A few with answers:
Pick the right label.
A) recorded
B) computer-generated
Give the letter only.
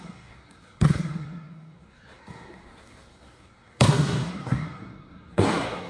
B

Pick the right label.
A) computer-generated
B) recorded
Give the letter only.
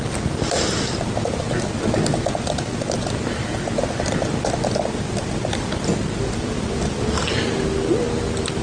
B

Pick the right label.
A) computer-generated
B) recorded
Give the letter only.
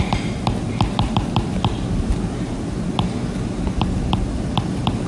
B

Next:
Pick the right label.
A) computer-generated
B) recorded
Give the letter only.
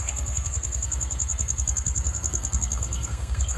A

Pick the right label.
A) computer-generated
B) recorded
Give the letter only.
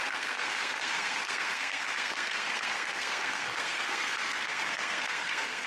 A